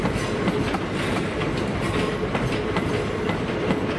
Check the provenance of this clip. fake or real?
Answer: real